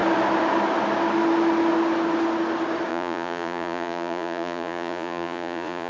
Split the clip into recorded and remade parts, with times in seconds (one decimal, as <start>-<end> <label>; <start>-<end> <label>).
0.0-2.9 recorded; 2.9-5.9 remade